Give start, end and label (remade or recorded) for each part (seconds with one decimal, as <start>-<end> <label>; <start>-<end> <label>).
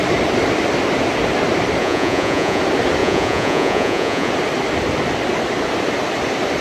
0.0-1.8 recorded; 1.8-2.6 remade; 2.6-3.0 recorded; 3.0-4.3 remade; 4.3-6.6 recorded